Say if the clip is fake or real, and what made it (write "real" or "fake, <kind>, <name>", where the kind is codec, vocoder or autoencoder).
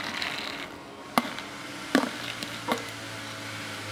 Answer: real